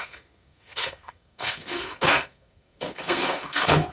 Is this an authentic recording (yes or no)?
no